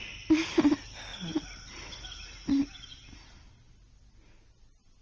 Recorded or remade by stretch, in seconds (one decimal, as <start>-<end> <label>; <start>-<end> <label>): 0.0-5.0 recorded